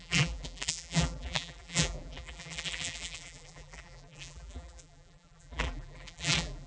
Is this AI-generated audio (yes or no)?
yes